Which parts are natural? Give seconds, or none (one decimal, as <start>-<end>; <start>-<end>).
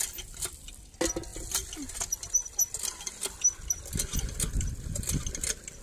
0.0-4.1; 5.1-5.8